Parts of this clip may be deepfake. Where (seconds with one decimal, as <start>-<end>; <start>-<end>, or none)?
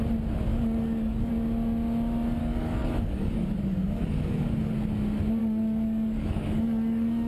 0.5-1.3; 2.4-4.7; 5.4-7.3